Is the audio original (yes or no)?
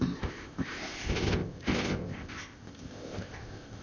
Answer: no